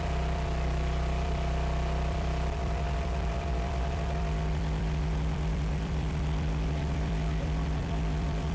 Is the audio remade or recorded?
remade